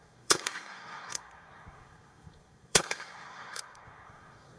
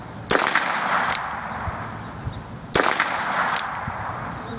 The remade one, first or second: first